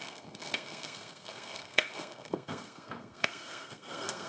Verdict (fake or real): fake